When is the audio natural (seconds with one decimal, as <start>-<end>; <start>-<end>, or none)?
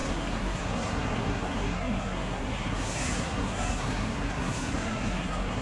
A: none